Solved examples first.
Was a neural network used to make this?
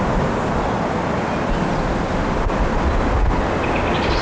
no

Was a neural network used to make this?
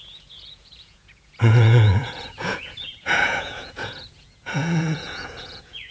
yes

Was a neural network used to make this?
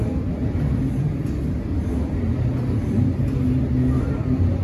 no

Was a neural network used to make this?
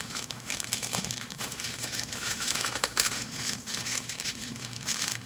yes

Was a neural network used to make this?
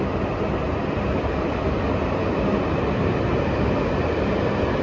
no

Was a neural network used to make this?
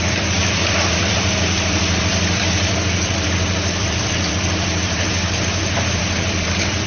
yes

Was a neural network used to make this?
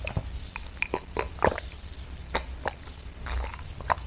no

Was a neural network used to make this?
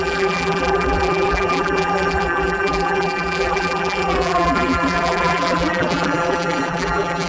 yes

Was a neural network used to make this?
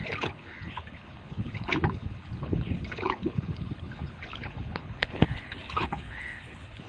yes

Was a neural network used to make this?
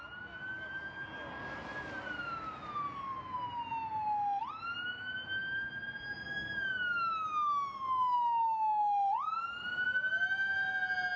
no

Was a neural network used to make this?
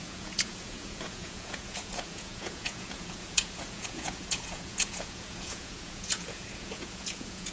yes